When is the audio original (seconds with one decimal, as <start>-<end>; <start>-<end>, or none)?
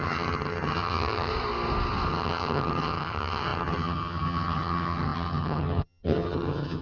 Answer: 1.3-2.1